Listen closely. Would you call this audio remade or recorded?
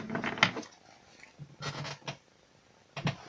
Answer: recorded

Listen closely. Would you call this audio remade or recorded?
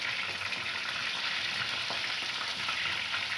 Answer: recorded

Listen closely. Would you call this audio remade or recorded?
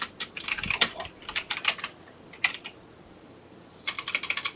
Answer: remade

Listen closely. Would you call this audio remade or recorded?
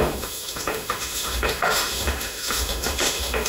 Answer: remade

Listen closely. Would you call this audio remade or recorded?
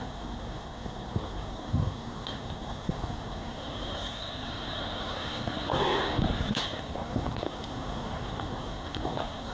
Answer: remade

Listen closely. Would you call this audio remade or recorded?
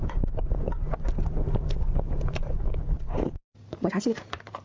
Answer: remade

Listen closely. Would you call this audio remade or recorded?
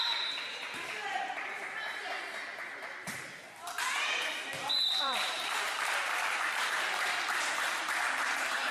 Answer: remade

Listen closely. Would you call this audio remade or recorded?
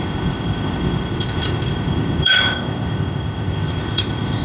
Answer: remade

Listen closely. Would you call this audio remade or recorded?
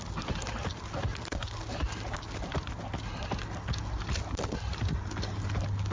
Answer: recorded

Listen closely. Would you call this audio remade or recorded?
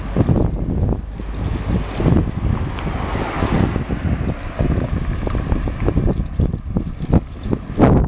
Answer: recorded